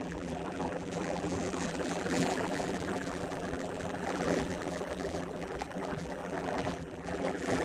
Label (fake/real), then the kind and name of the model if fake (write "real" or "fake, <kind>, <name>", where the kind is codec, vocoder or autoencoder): fake, vocoder, BigVGAN v2